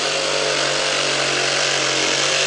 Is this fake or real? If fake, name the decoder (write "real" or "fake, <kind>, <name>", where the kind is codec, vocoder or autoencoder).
real